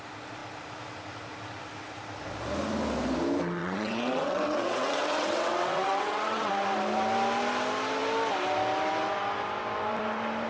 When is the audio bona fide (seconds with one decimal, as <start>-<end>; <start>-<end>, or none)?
0.0-3.6; 6.5-10.5

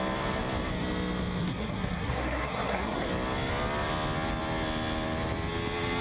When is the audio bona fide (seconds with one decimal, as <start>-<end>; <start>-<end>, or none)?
0.0-1.4; 3.1-6.0

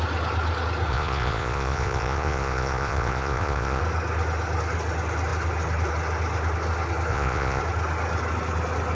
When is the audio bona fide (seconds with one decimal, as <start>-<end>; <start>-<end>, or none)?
0.0-0.9; 3.8-7.1; 7.6-8.9

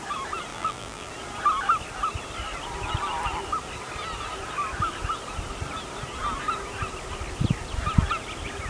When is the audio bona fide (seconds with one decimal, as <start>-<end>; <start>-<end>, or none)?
0.0-0.5; 1.1-8.7

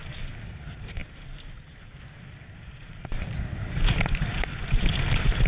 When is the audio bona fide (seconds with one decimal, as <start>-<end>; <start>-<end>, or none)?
0.0-5.5